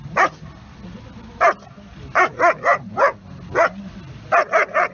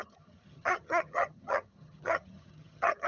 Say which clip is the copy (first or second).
second